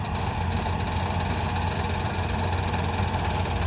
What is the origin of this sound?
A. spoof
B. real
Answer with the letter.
A